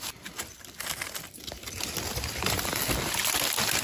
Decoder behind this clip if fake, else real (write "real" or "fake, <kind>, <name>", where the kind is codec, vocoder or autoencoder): real